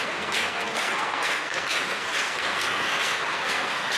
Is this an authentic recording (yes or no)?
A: no